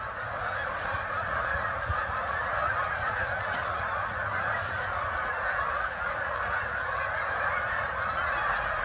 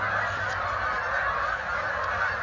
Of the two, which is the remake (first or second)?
first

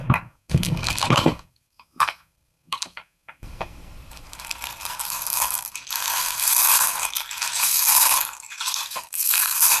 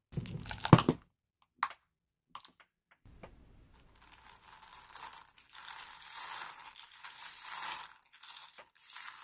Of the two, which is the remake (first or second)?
first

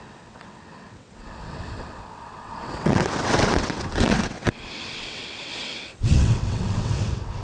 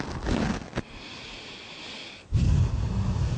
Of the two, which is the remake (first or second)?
first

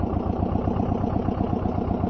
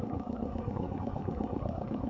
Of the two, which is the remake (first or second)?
second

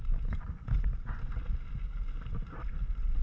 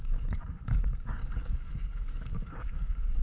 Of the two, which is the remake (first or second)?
second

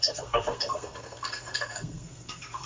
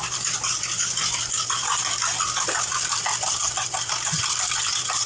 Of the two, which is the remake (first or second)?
first